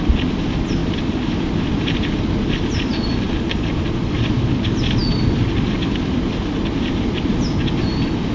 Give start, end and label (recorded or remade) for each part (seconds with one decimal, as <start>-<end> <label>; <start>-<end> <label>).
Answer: 0.0-8.3 recorded